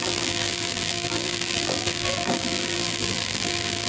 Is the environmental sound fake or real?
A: fake